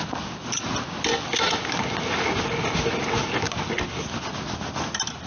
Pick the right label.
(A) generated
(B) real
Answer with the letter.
B